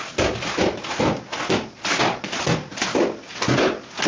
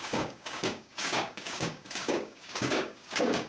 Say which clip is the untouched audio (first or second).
first